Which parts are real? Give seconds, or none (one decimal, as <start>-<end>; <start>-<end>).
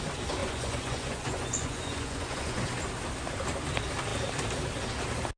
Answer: 0.0-0.4; 2.7-5.4